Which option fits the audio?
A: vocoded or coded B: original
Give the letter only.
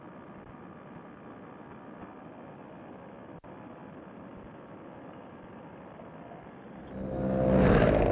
B